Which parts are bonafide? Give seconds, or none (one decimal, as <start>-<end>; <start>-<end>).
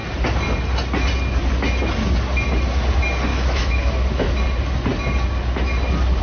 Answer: 0.0-3.3; 4.4-6.2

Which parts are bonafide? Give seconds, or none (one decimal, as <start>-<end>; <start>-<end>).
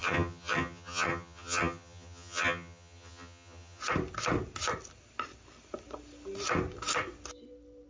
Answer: 3.8-7.9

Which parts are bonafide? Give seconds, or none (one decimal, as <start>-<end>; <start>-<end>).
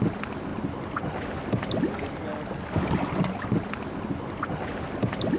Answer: 0.0-5.4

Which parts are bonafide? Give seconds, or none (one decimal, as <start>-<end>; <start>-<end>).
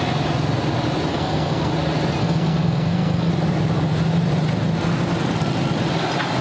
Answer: 0.0-1.1; 1.7-2.2; 3.3-6.4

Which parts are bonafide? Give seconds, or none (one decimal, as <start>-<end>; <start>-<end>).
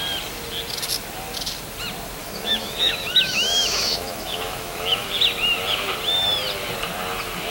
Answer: 0.0-2.2; 5.1-7.5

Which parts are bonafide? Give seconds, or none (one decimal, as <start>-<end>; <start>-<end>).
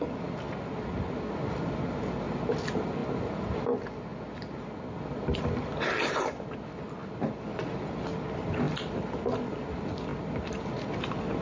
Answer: 0.0-11.4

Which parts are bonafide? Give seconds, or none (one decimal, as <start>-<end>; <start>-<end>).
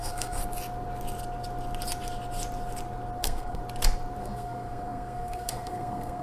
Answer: 0.4-3.2; 3.6-4.2